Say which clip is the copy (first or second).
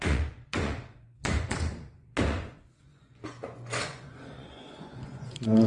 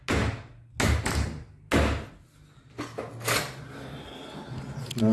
first